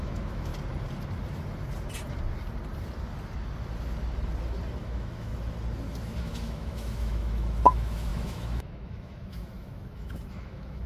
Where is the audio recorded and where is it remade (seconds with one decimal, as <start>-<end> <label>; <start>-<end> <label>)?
0.0-0.5 remade; 0.5-4.8 recorded; 4.8-5.3 remade; 5.3-6.2 recorded; 6.2-10.9 remade